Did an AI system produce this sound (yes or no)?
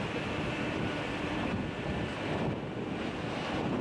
no